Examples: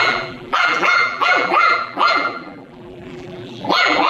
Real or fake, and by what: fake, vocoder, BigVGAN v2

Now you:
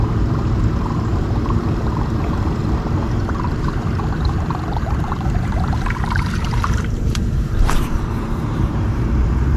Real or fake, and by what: fake, vocoder, BigVGAN v2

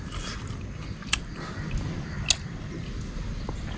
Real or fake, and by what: real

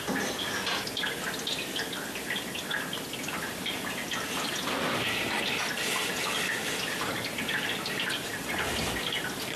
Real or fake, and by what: real